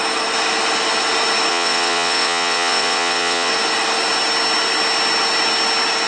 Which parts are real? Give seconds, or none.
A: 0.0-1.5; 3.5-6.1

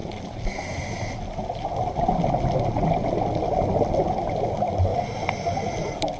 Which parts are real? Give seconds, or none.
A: 0.0-6.2